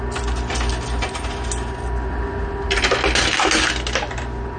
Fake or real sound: real